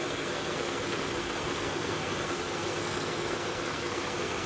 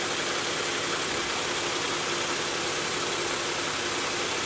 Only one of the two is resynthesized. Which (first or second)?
first